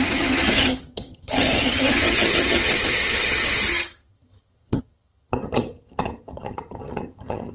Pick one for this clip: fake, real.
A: fake